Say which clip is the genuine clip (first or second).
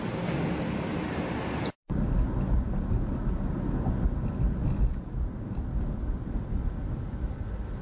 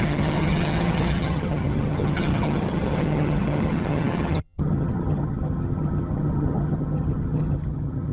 first